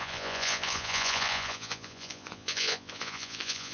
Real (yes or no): no